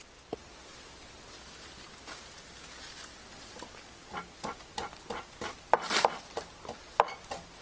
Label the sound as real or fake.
real